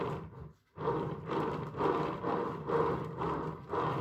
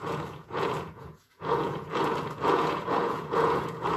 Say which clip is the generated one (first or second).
second